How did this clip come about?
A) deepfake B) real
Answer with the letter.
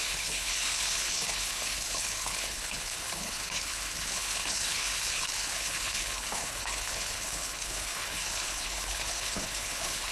A